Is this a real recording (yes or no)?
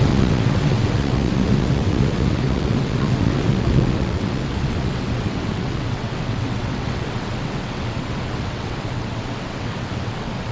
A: no